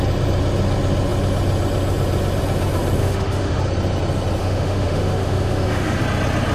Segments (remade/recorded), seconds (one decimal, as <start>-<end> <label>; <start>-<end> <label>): 0.0-3.0 recorded; 3.0-3.6 remade; 3.6-4.4 recorded; 4.4-6.0 remade; 6.0-6.5 recorded